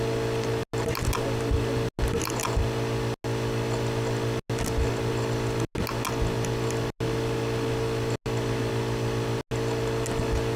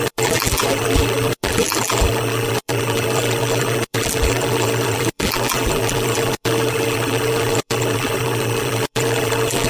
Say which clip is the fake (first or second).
second